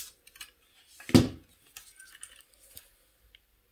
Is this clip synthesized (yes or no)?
no